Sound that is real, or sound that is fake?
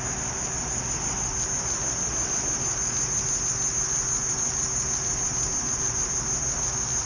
real